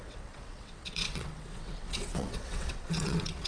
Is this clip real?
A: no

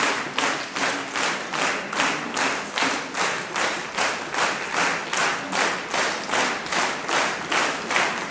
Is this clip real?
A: yes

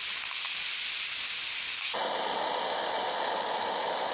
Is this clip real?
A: yes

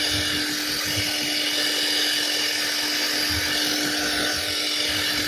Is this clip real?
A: yes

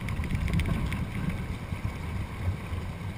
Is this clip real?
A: yes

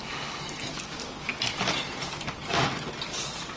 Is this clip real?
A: yes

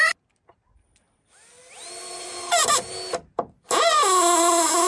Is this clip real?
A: yes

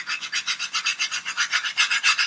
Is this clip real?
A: no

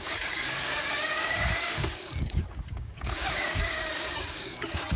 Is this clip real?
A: no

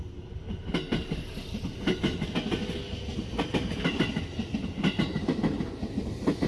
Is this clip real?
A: yes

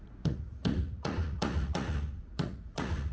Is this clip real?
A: no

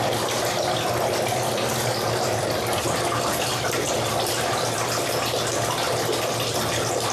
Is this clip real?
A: yes